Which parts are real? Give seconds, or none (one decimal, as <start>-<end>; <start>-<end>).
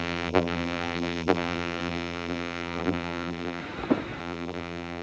3.6-4.2